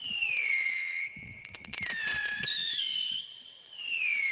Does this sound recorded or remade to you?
remade